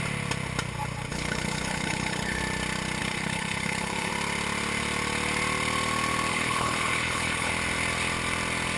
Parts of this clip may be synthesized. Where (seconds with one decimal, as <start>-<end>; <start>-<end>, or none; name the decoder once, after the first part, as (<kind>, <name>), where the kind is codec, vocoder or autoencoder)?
1.1-2.4 (codec, HILCodec); 3.0-4.1; 6.3-7.5